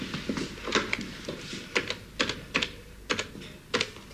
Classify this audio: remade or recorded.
recorded